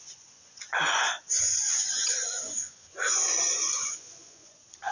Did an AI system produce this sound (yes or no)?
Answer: yes